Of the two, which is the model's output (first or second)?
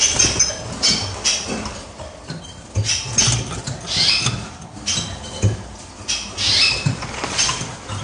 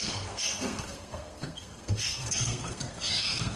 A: second